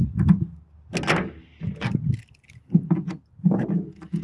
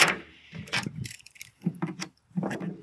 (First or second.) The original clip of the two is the first